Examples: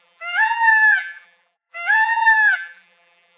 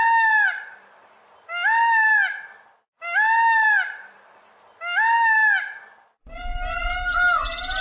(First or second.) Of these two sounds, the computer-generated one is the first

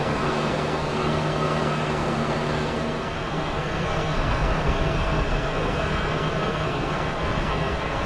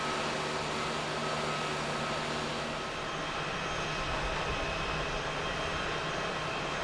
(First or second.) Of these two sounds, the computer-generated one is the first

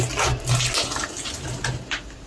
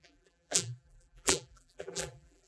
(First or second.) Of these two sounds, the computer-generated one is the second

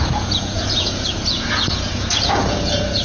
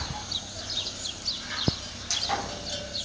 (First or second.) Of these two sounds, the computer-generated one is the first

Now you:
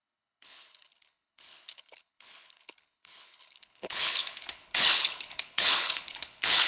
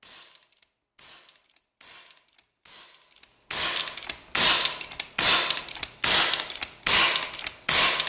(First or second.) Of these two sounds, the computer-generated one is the first